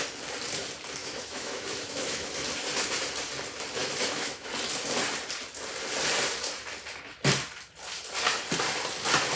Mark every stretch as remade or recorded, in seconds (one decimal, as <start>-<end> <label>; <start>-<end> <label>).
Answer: 0.0-1.0 recorded; 1.0-2.3 remade; 2.3-3.8 recorded; 3.8-4.5 remade; 4.5-9.4 recorded